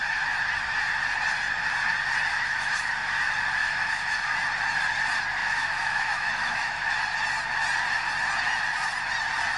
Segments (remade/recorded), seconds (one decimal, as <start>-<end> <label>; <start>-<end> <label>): 0.0-2.3 recorded; 2.3-2.9 remade; 2.9-3.6 recorded; 3.6-4.3 remade; 4.3-5.4 recorded; 5.4-6.9 remade; 6.9-9.6 recorded